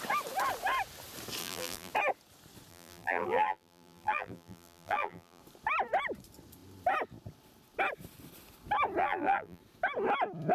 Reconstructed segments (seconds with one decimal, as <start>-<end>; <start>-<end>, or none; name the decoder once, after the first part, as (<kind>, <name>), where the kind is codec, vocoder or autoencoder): 1.4-1.9 (vocoder, BigVGAN v2); 2.7-5.4; 9.0-9.6